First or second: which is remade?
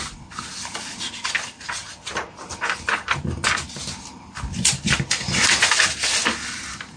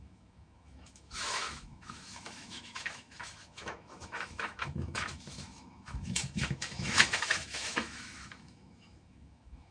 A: second